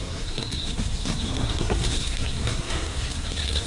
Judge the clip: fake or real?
fake